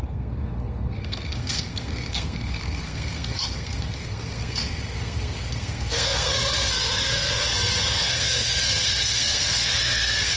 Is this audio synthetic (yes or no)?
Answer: yes